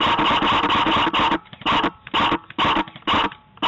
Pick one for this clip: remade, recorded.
recorded